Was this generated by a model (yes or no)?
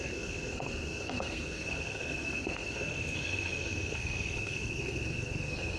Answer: yes